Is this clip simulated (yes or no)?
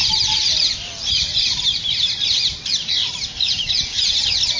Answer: no